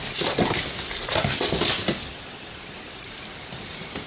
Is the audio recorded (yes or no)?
yes